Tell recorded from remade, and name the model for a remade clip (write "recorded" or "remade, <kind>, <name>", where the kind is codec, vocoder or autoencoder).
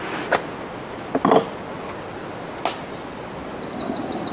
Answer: recorded